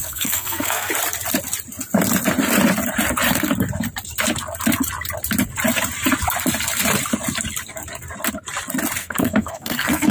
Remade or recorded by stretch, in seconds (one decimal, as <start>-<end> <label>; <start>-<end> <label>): 0.0-0.9 remade; 0.9-9.0 recorded; 9.0-10.1 remade